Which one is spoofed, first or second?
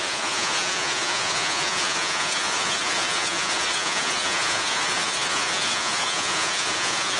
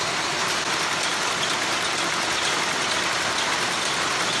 first